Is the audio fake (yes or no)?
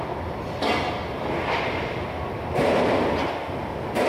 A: no